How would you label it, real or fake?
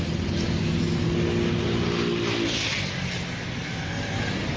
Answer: real